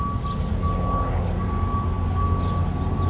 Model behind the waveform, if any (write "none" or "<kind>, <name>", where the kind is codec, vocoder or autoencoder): none